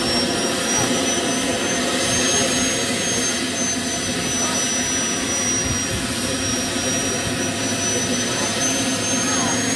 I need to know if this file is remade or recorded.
recorded